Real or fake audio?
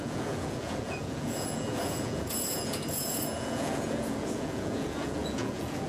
fake